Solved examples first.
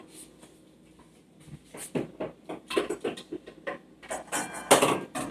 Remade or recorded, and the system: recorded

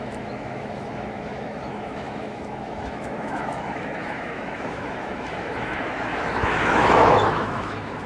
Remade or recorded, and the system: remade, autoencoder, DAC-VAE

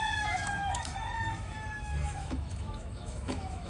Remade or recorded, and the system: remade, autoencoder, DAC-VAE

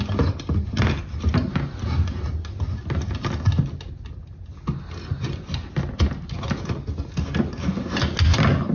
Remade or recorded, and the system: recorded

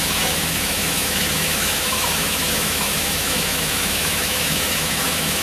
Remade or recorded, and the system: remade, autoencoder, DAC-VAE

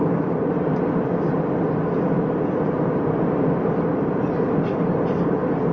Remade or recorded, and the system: recorded